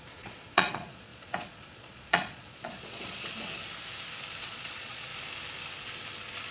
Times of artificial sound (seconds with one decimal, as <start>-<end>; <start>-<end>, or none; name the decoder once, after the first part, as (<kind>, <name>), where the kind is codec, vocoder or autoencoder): 0.0-3.3 (vocoder, Vocos); 4.4-5.1